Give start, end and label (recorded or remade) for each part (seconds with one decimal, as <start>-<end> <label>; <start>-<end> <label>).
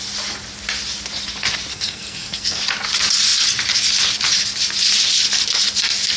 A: 0.0-1.7 recorded; 1.7-2.6 remade; 2.6-6.2 recorded